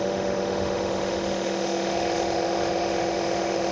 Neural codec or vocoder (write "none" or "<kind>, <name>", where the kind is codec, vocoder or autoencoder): autoencoder, DAC-VAE